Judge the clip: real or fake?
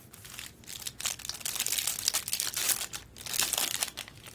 real